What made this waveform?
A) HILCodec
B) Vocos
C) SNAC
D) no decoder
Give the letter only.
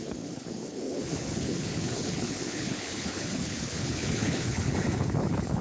A